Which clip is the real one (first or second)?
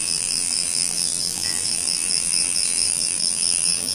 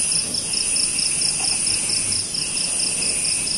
second